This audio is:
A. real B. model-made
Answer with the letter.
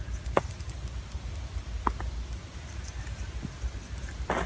A